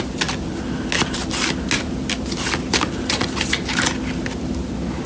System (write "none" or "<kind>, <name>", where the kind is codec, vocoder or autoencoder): none